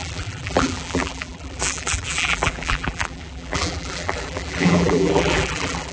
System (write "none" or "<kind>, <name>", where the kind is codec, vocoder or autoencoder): vocoder, BigVGAN v2